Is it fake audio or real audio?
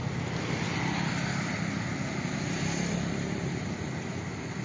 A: real